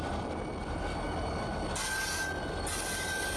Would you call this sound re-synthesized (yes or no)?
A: no